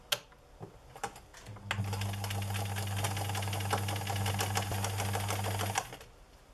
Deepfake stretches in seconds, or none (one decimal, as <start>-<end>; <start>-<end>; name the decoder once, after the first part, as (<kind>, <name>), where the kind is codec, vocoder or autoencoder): none